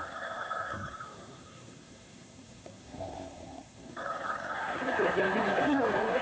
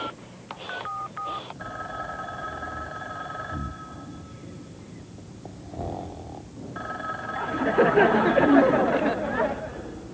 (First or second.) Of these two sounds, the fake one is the first